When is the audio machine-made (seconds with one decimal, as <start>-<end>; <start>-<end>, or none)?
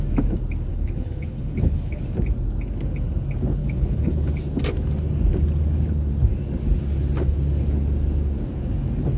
0.7-2.0; 3.6-4.3